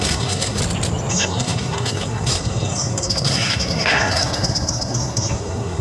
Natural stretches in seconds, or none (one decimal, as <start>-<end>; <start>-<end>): 0.6-1.1